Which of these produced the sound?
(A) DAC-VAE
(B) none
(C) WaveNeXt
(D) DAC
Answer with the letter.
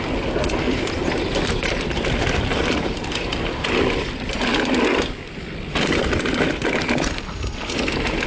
B